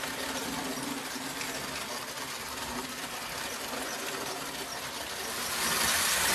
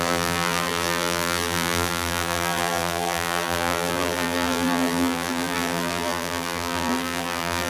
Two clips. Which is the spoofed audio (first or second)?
second